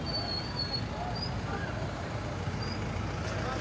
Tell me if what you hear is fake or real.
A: real